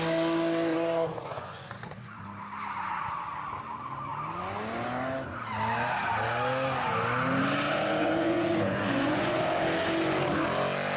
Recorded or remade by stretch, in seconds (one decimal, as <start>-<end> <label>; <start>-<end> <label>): 0.0-0.7 recorded; 0.7-2.2 remade; 2.2-8.0 recorded; 8.0-9.4 remade; 9.4-11.0 recorded